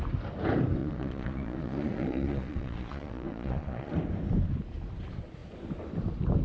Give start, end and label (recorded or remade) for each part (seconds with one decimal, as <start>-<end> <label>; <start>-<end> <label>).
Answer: 0.0-0.8 recorded; 0.8-3.9 remade; 3.9-6.4 recorded